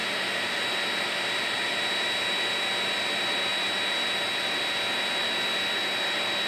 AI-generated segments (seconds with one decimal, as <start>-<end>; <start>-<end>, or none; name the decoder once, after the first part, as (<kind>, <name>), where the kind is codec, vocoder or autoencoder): none